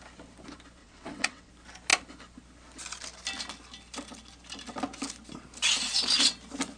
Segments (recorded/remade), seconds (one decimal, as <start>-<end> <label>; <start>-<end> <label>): 0.0-0.8 recorded; 0.8-1.5 remade; 1.5-6.8 recorded